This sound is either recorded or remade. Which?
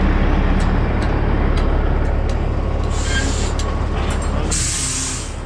recorded